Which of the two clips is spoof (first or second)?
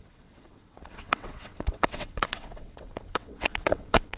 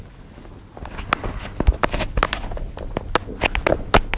first